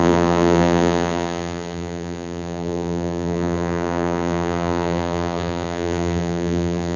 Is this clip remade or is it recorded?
remade